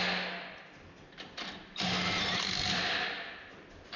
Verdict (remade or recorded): recorded